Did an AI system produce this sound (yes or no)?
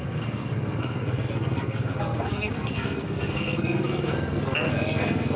yes